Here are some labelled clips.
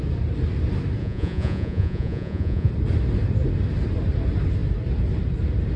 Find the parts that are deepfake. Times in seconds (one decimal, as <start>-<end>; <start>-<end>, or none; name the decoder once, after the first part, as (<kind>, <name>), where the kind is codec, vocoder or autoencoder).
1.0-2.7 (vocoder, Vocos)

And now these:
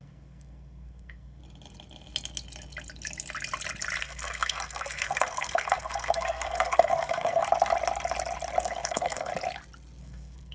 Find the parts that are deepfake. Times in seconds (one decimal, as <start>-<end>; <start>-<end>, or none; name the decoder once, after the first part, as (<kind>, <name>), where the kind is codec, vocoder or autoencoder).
0.0-1.4 (codec, SNAC); 4.0-7.4; 8.6-9.3; 10.0-10.5

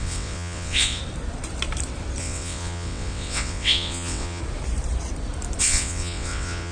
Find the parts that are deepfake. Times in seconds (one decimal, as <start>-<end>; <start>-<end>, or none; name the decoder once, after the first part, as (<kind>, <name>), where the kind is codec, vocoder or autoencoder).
0.0-1.0 (vocoder, WaveNeXt); 2.2-4.4; 5.6-6.7

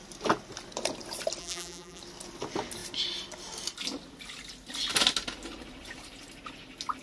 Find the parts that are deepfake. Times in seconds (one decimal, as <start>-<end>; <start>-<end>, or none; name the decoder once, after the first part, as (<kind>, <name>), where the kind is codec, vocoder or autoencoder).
1.4-2.0 (vocoder, BigVGAN v2)

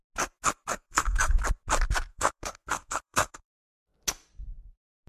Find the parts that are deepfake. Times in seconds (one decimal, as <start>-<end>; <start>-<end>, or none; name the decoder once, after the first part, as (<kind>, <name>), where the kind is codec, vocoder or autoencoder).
0.7-1.3 (codec, SNAC); 2.1-3.5

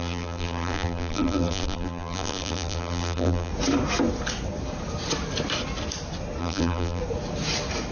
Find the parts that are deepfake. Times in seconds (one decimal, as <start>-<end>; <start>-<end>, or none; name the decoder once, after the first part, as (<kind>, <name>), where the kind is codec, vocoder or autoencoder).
0.0-3.5 (vocoder, BigVGAN v2); 6.4-7.0

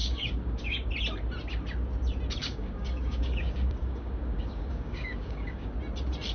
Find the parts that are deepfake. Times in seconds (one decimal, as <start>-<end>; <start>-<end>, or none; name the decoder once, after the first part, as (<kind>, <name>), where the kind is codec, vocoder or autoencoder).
0.0-0.9 (codec, DAC); 2.4-5.7